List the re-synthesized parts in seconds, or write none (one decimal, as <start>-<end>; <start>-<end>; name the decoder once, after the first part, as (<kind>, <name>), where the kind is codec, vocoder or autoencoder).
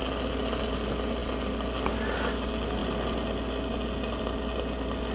none